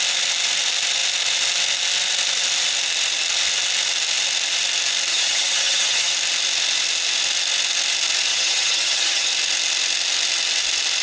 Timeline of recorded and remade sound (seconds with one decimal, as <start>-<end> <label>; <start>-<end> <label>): 0.0-5.1 recorded; 5.1-6.1 remade; 6.1-8.3 recorded; 8.3-9.3 remade; 9.3-11.0 recorded